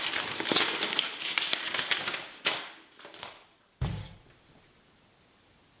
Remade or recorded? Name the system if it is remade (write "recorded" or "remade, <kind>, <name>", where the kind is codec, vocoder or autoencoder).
recorded